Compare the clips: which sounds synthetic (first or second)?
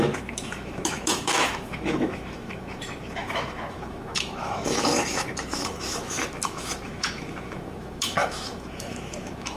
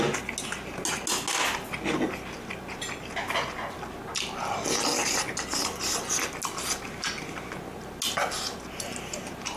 first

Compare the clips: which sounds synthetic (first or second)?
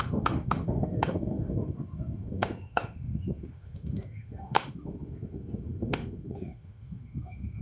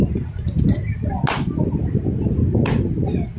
first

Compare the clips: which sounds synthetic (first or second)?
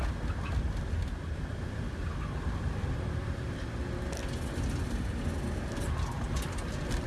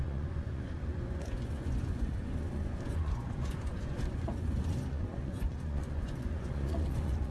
second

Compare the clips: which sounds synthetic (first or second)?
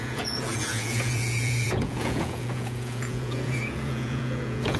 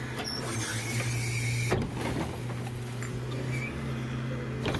first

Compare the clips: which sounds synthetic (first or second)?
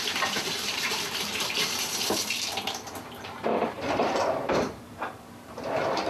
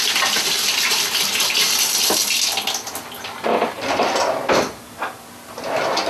first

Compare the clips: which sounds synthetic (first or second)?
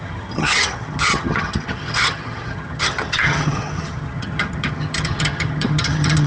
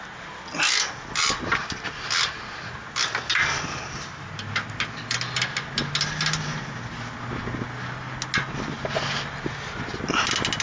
first